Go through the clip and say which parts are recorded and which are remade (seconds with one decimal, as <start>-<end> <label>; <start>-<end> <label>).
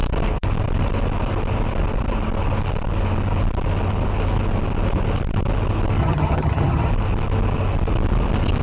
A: 0.0-6.0 recorded; 6.0-6.9 remade; 6.9-8.6 recorded